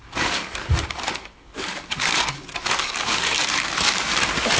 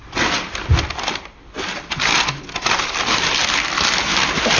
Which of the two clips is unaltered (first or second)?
second